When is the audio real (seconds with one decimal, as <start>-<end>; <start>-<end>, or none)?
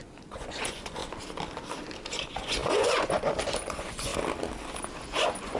1.0-2.1; 4.1-5.0